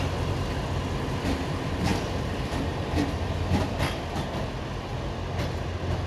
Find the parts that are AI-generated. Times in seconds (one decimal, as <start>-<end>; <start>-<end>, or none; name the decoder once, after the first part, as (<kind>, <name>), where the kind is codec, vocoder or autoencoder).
none